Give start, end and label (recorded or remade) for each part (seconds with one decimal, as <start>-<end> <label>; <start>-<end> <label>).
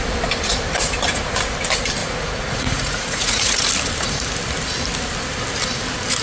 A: 0.0-2.0 recorded; 2.0-3.7 remade; 3.7-6.2 recorded